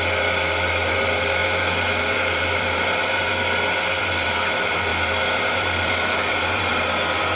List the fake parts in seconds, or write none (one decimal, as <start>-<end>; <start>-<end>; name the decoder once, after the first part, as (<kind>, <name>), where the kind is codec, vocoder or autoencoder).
0.0-1.4 (vocoder, BigVGAN v2); 2.0-3.3; 4.0-7.4